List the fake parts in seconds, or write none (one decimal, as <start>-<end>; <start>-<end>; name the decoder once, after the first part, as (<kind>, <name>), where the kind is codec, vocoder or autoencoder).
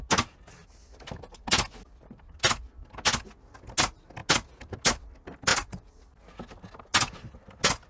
none